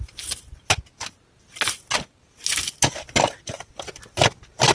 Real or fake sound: real